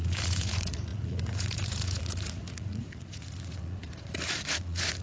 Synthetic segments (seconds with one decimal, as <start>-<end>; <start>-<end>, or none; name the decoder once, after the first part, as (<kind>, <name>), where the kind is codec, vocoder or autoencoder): 0.0-5.0 (vocoder, Vocos)